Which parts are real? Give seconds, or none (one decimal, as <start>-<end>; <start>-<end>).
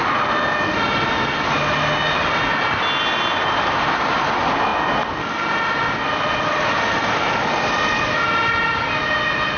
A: 0.0-9.6